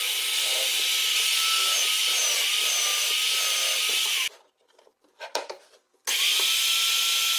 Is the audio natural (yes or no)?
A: yes